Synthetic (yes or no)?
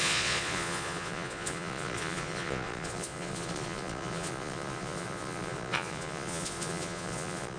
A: yes